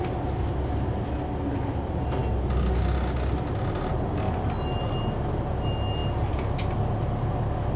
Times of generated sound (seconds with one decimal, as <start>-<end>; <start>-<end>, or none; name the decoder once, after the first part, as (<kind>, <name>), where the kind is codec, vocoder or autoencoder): none

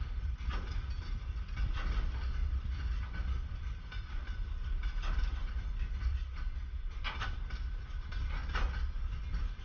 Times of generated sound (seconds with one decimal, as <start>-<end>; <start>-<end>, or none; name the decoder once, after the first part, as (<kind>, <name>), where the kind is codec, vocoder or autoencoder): none